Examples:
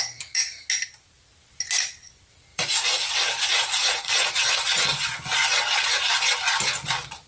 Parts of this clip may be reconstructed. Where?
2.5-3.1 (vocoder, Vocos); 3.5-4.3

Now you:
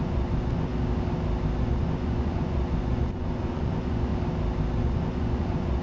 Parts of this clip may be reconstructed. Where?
0.0-0.7 (vocoder, Vocos); 1.6-4.1; 4.8-5.8

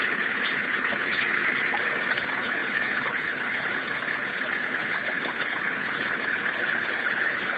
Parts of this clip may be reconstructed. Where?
0.0-1.4 (codec, HILCodec); 2.1-7.6

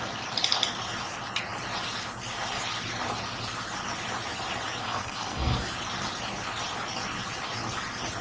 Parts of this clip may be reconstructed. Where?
4.8-5.7 (codec, SNAC)

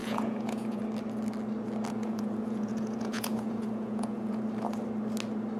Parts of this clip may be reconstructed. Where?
0.0-0.8 (vocoder, Vocos); 2.0-4.4

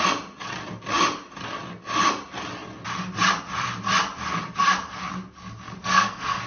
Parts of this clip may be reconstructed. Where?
5.8-6.5 (codec, SNAC)

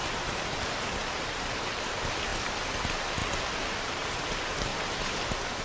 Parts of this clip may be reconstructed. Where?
0.0-2.3 (vocoder, BigVGAN v2); 2.8-3.2; 3.8-4.7

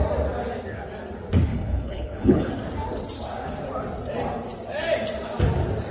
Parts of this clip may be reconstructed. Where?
1.5-2.5 (codec, HILCodec)